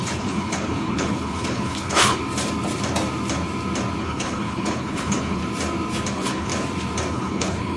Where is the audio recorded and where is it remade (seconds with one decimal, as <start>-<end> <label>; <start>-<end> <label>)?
0.0-2.2 remade; 2.2-4.0 recorded; 4.0-5.4 remade; 5.4-6.1 recorded; 6.1-6.5 remade; 6.5-7.1 recorded; 7.1-7.8 remade